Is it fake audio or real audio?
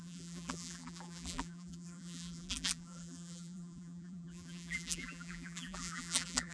fake